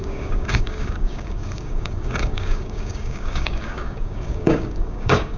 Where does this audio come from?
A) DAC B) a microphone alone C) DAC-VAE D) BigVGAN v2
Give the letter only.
A